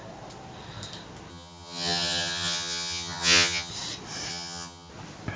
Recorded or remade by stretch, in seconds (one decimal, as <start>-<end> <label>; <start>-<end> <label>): 0.0-1.3 recorded; 1.3-3.7 remade; 3.7-4.3 recorded; 4.3-4.9 remade; 4.9-5.4 recorded